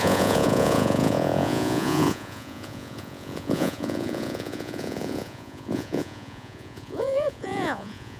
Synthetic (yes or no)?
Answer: yes